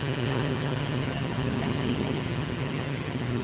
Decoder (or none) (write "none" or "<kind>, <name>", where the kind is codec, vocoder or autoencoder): vocoder, HiFi-GAN